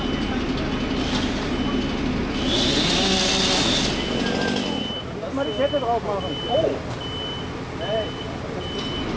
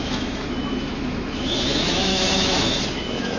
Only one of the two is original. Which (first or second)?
first